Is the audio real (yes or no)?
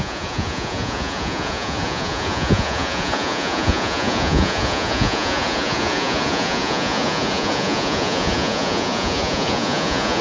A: no